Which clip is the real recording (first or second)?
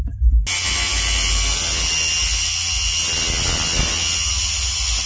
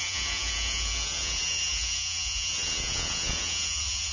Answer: first